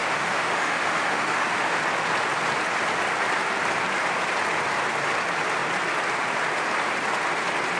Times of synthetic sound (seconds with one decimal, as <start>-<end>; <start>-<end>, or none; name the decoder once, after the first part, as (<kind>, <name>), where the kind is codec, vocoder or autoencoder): 0.0-1.8 (autoencoder, DAC-VAE)